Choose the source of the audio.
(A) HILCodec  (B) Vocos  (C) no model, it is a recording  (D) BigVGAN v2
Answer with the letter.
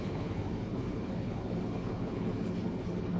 A